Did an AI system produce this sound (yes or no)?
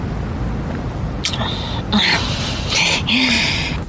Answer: no